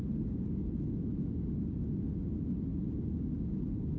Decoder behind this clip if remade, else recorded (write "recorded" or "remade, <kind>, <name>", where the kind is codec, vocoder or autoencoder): recorded